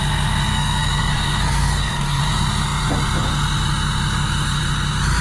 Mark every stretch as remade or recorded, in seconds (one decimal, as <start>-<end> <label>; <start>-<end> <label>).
0.0-0.5 recorded; 0.5-2.2 remade; 2.2-5.2 recorded